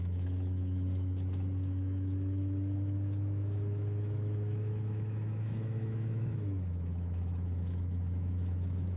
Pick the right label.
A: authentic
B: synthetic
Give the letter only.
B